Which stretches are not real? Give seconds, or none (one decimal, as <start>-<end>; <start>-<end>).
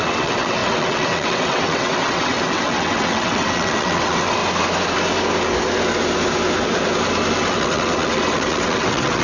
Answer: 0.0-4.4; 7.5-9.2